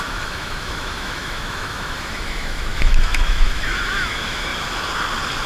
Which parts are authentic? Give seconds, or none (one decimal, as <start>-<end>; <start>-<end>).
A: 4.5-5.5